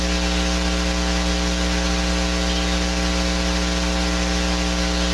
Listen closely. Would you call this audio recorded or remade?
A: recorded